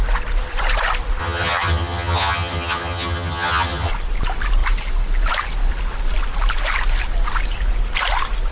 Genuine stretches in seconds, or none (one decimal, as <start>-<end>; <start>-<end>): 0.0-1.2; 3.9-8.5

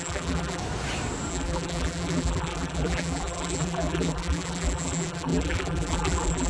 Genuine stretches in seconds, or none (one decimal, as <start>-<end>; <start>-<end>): 0.6-1.3

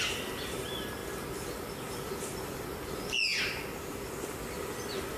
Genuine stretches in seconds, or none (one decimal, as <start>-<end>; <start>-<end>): 0.0-5.2

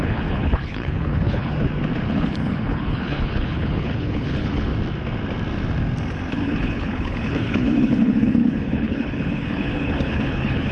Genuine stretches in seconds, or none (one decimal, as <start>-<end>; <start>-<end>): 1.5-2.1; 4.7-6.3

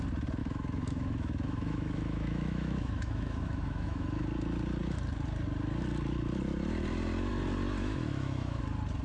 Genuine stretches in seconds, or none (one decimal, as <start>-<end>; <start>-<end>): 0.0-0.4; 4.2-7.8; 8.6-9.0

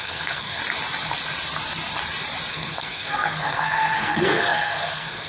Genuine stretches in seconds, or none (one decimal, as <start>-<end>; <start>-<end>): 0.6-2.5

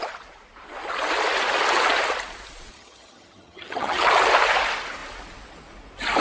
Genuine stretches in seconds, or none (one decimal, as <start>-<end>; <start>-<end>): 0.0-2.7; 4.1-6.2

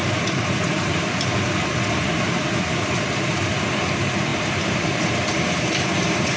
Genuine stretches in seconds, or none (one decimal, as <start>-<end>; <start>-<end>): none